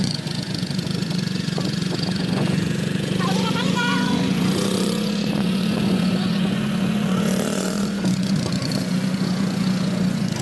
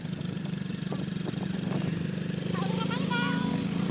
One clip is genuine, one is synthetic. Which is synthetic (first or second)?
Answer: first